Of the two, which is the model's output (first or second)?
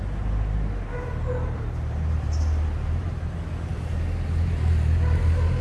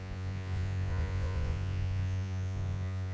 second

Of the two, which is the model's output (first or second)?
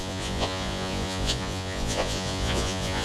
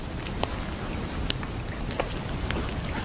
first